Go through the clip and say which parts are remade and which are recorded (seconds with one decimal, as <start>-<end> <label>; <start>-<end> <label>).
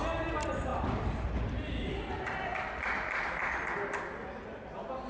0.0-5.1 recorded